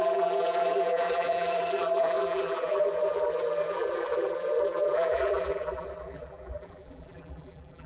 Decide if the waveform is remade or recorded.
remade